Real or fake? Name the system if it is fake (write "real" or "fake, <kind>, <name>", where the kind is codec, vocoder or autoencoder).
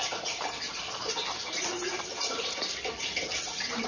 fake, vocoder, BigVGAN v2